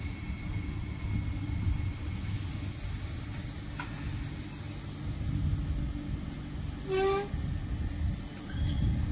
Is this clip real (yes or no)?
yes